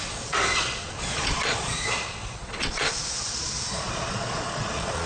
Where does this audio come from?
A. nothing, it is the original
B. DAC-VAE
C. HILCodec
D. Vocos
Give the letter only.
D